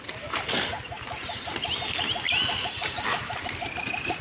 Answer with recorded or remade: recorded